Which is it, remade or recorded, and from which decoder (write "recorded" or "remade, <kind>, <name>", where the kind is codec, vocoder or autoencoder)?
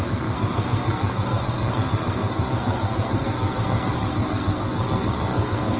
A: remade, codec, SNAC